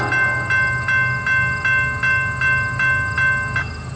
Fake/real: real